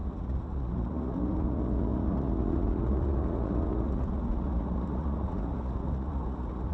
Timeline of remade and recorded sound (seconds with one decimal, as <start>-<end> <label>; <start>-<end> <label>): 0.0-6.7 remade